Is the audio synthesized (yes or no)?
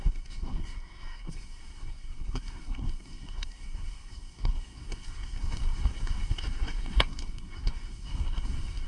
yes